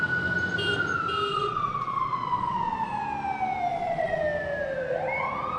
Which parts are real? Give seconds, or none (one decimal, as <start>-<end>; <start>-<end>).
0.0-1.3; 3.0-3.7; 4.2-5.6